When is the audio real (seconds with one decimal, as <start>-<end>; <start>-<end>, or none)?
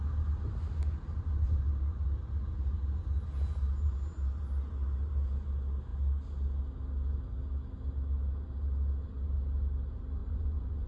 0.0-10.2